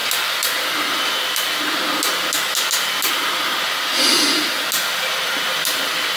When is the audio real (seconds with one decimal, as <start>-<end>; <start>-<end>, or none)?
0.0-6.2